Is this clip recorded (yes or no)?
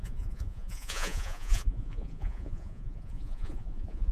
no